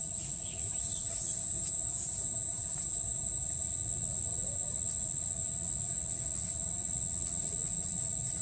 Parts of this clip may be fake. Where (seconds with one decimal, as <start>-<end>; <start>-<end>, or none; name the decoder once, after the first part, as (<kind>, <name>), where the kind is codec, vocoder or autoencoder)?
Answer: 0.0-1.3 (vocoder, Vocos); 3.6-8.4